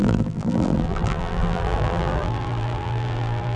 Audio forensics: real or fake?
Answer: fake